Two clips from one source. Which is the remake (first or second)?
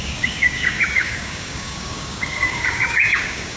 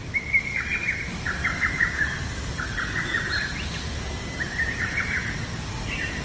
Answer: first